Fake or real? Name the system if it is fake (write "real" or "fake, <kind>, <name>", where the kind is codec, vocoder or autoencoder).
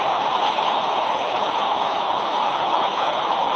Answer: fake, codec, HILCodec